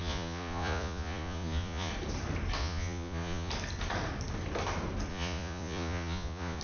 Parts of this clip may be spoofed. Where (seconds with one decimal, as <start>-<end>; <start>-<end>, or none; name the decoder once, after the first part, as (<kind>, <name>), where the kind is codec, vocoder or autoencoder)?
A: 0.0-1.9 (vocoder, Vocos); 2.6-3.5; 5.1-6.6